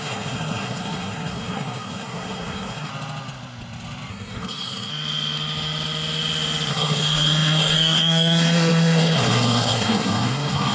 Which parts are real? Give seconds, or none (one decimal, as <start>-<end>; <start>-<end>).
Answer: 2.9-4.1; 4.9-6.7